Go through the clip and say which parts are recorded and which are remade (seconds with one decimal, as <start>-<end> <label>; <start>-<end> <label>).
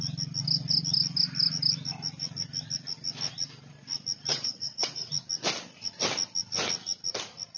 0.0-4.3 recorded; 4.3-5.1 remade; 5.1-7.6 recorded